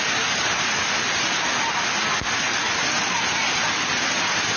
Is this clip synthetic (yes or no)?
no